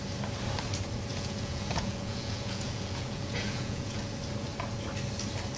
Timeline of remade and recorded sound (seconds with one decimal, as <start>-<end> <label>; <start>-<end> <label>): 0.0-1.1 recorded; 1.1-4.0 remade; 4.0-5.6 recorded